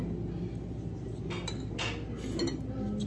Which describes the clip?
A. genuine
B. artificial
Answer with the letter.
A